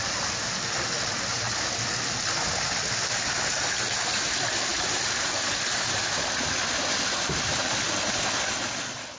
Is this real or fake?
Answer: real